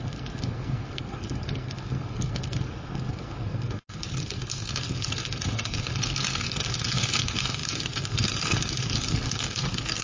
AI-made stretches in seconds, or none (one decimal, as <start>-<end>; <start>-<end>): 0.0-10.0